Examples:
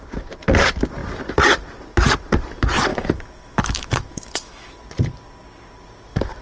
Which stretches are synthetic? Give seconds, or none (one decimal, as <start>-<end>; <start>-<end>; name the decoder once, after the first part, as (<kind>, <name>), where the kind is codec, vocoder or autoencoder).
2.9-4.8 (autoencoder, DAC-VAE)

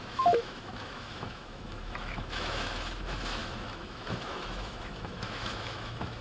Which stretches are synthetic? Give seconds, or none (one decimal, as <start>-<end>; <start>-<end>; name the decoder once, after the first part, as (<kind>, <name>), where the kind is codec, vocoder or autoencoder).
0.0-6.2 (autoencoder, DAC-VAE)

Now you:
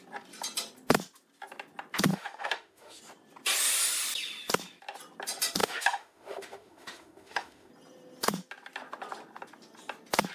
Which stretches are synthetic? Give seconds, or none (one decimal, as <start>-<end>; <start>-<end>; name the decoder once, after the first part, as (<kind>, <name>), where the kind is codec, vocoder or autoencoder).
2.1-3.0 (autoencoder, DAC-VAE); 5.6-7.7